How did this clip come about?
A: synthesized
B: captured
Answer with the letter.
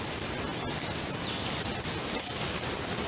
B